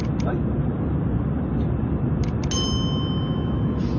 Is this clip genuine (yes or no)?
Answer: yes